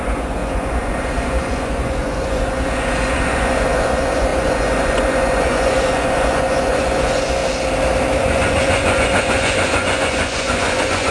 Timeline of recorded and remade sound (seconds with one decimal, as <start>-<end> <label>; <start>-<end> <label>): 0.0-7.4 remade; 7.4-8.2 recorded; 8.2-11.1 remade